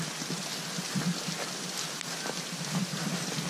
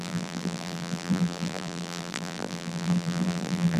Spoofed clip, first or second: second